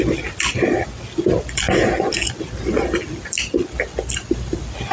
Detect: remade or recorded recorded